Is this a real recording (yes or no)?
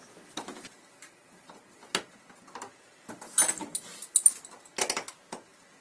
yes